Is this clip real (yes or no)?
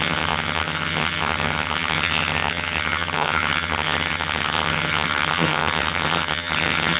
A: no